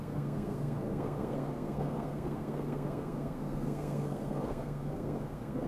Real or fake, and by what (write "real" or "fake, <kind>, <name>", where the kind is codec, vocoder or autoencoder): fake, codec, SNAC